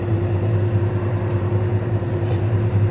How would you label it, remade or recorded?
remade